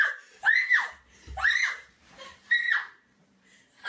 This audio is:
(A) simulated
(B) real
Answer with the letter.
A